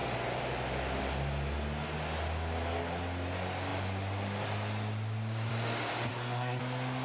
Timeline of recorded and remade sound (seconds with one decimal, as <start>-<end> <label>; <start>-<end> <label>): 0.0-6.1 recorded; 6.1-6.6 remade; 6.6-7.0 recorded